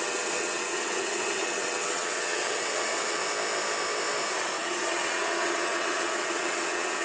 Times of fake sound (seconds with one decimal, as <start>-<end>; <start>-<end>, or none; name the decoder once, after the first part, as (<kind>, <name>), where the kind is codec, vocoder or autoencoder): 0.0-3.2 (vocoder, WaveNeXt); 4.6-7.0